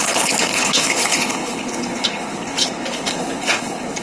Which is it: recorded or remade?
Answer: remade